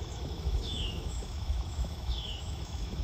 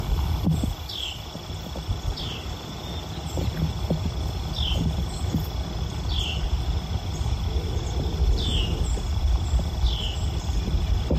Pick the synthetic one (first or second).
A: first